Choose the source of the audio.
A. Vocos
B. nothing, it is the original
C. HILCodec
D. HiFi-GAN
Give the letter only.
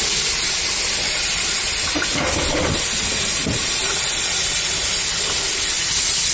B